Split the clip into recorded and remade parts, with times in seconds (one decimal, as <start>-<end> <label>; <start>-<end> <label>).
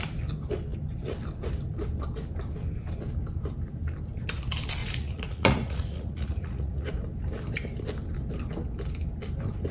0.0-4.8 recorded; 4.8-6.9 remade; 6.9-9.7 recorded